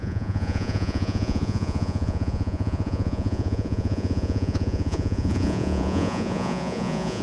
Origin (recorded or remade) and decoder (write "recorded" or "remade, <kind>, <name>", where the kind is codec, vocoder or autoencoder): remade, vocoder, Vocos